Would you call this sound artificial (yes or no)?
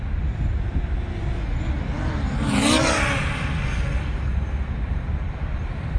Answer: no